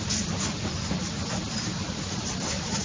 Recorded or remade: recorded